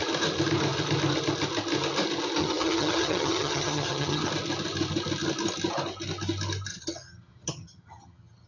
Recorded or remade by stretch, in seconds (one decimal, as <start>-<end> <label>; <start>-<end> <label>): 0.0-2.4 recorded; 2.4-4.3 remade; 4.3-6.7 recorded; 6.7-8.5 remade